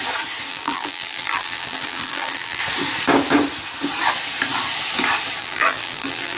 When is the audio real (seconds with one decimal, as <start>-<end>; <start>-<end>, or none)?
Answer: 0.0-0.5; 2.6-5.4